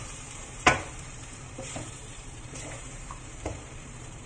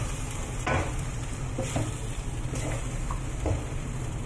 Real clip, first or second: second